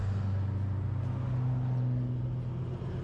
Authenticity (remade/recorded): recorded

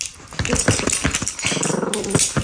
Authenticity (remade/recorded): recorded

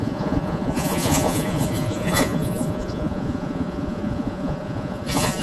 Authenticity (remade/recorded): remade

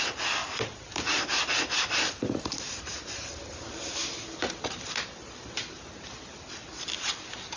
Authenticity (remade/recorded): recorded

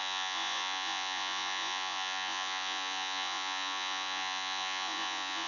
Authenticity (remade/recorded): remade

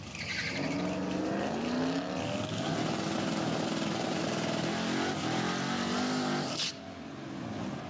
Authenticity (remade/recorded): recorded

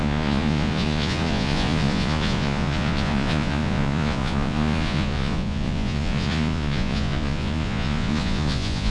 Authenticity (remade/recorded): remade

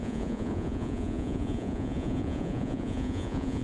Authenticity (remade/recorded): remade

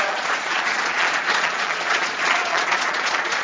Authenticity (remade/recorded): remade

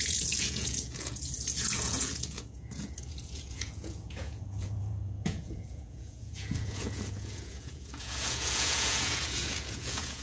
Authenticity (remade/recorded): remade